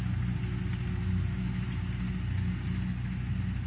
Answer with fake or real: real